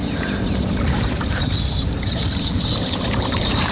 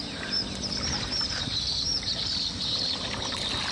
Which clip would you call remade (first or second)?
first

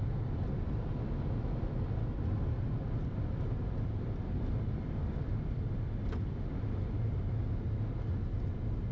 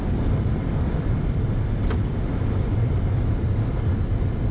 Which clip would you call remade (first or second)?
second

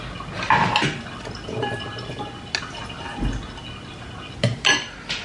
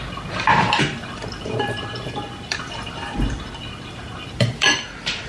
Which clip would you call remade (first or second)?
second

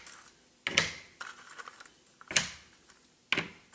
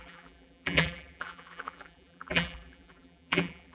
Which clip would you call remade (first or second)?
second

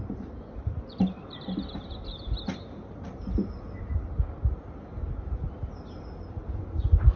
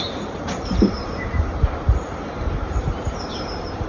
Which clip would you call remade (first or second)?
second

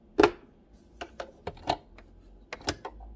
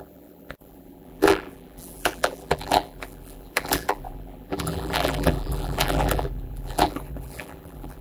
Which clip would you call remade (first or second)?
second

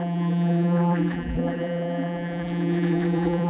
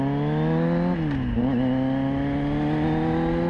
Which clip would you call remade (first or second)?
first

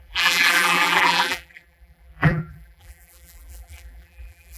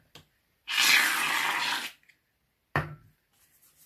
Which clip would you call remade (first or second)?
first